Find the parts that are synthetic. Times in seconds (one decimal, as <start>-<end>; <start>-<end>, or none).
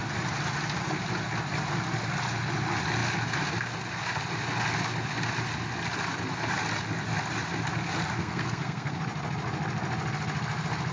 8.2-9.0